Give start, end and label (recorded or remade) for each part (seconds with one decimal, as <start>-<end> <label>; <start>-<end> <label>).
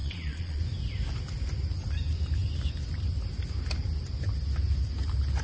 0.0-0.6 remade; 0.6-5.4 recorded